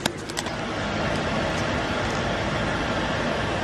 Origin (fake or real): real